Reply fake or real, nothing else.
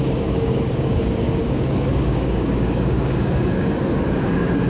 fake